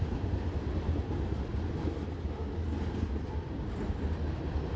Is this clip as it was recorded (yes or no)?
yes